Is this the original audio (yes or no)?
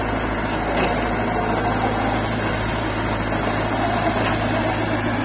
yes